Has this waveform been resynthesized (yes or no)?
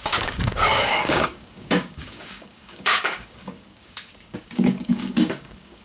yes